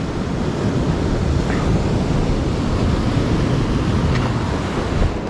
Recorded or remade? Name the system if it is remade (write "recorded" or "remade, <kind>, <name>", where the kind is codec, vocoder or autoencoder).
recorded